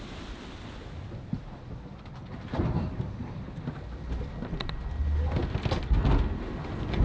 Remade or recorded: recorded